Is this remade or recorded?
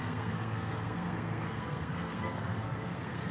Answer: remade